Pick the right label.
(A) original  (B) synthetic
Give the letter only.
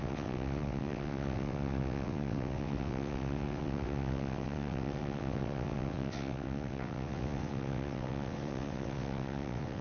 B